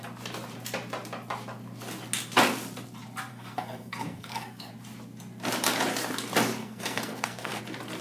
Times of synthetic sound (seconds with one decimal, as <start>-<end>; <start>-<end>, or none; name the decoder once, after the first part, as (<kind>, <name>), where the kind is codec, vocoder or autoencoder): 3.3-4.7 (codec, SNAC); 6.6-7.6